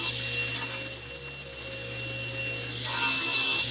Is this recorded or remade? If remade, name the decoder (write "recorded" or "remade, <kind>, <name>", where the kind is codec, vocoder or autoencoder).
recorded